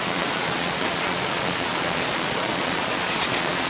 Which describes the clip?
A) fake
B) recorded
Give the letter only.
A